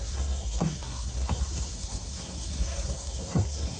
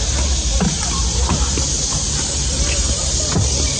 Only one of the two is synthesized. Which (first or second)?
first